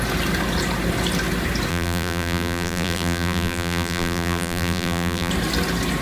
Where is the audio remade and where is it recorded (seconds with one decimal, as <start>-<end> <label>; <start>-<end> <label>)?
0.0-1.7 recorded; 1.7-5.3 remade; 5.3-6.0 recorded